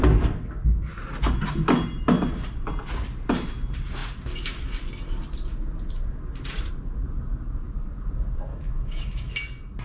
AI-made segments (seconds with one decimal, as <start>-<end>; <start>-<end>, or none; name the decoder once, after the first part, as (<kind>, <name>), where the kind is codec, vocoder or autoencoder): 8.5-9.3 (autoencoder, DAC-VAE)